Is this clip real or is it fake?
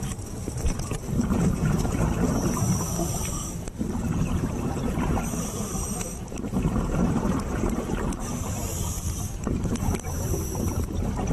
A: fake